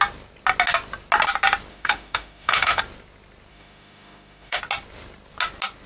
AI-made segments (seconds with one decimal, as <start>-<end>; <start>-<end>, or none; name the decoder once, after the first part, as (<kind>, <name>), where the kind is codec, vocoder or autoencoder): 1.7-2.8 (autoencoder, DAC-VAE); 3.5-4.6